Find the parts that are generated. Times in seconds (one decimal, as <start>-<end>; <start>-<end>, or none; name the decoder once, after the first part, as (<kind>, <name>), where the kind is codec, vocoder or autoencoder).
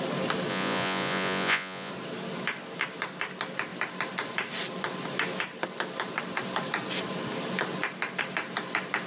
0.5-1.9 (vocoder, Vocos)